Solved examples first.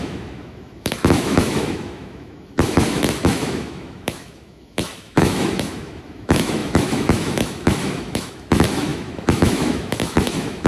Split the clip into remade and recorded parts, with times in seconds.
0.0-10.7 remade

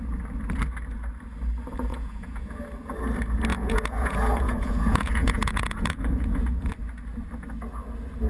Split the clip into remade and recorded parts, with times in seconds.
0.0-1.9 recorded; 1.9-2.6 remade; 2.6-3.5 recorded; 3.5-6.7 remade; 6.7-8.3 recorded

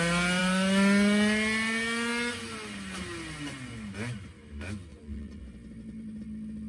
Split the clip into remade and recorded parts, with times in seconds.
0.0-4.9 recorded; 4.9-5.4 remade; 5.4-6.7 recorded